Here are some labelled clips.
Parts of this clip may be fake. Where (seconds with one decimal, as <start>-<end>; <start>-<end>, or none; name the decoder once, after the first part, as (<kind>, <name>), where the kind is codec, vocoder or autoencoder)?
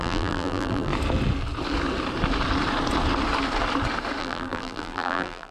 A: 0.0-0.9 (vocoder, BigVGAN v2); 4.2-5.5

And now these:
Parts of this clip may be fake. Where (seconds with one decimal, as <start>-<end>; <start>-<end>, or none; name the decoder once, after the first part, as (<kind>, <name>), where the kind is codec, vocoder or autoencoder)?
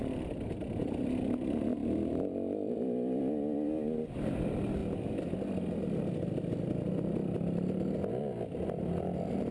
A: none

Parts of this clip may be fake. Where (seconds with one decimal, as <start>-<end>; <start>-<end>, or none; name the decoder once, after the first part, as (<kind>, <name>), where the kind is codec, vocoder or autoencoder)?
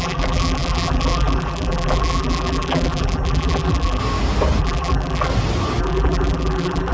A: 0.0-4.0 (vocoder, BigVGAN v2); 4.6-5.3; 5.8-6.9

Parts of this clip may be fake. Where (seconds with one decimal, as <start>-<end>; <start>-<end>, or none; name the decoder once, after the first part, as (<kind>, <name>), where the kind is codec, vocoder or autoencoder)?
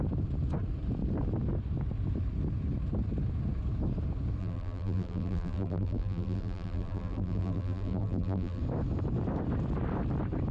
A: 4.4-8.6 (vocoder, BigVGAN v2)